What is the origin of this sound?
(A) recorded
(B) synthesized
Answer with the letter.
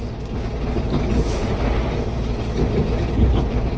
A